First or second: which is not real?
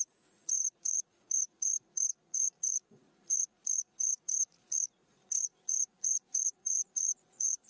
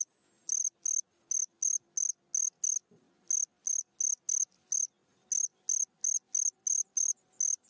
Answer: first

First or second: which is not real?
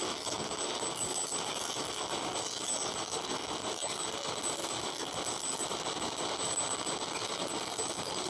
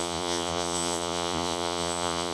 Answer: second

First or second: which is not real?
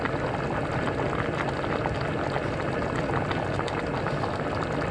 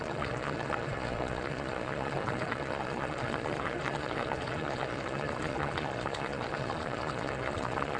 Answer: second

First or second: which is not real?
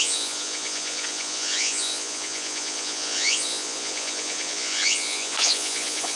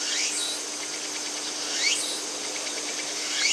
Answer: first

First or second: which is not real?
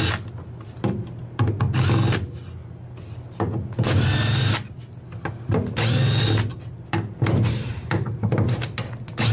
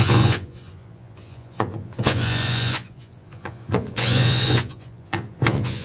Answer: second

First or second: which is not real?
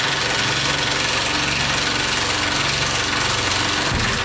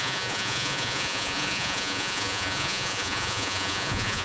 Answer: second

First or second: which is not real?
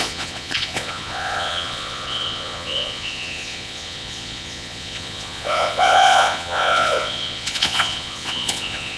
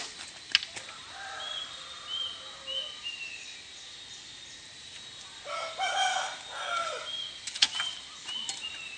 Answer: first